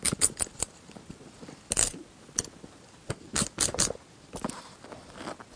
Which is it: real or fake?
real